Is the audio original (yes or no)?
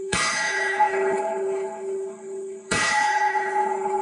no